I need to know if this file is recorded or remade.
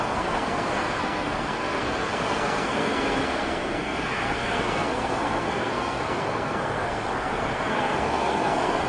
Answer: remade